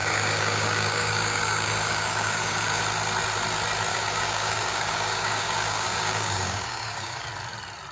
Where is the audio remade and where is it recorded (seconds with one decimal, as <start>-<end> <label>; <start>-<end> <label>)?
0.0-2.8 remade; 2.8-3.9 recorded; 3.9-7.3 remade; 7.3-7.9 recorded